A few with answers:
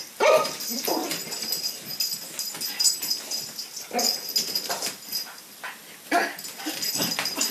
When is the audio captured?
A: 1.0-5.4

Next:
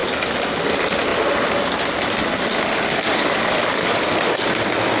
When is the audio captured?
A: 0.0-5.0